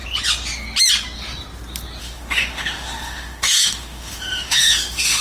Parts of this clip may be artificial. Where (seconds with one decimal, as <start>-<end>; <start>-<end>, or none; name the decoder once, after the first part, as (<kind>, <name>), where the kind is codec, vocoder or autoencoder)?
2.0-5.2 (autoencoder, DAC-VAE)